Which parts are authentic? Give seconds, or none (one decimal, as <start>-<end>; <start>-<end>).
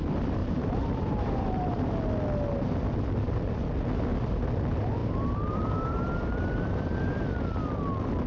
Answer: 0.0-0.4; 1.8-5.0; 7.2-8.3